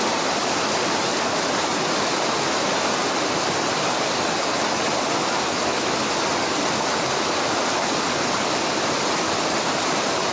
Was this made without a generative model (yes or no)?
yes